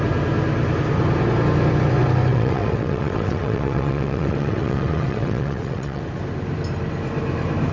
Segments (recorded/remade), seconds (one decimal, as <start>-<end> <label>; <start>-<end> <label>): 0.0-2.3 recorded; 2.3-6.0 remade; 6.0-7.7 recorded